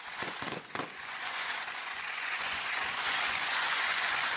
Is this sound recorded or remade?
remade